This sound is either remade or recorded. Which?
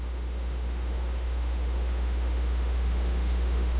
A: remade